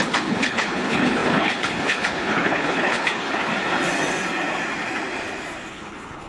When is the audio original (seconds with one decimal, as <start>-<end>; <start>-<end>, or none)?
3.5-5.7